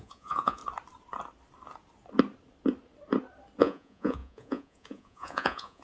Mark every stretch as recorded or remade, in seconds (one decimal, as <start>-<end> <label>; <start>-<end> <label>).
0.0-0.6 remade; 0.6-3.6 recorded; 3.6-5.8 remade